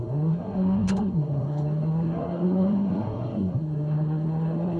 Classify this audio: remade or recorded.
remade